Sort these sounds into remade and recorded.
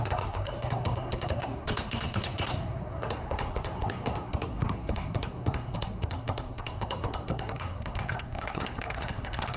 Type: remade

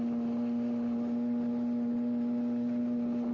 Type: recorded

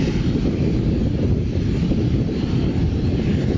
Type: recorded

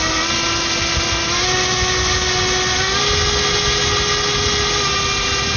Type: recorded